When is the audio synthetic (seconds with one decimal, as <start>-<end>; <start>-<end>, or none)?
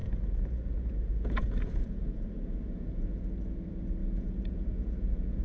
0.0-3.2; 4.0-5.4